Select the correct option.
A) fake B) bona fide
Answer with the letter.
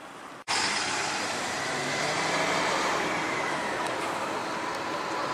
A